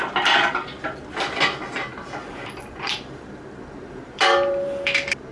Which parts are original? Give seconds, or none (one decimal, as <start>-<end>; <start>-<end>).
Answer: 0.0-1.9